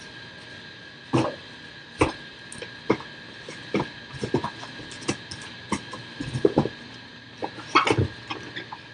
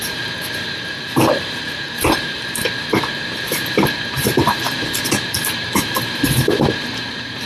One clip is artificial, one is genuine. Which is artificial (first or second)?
second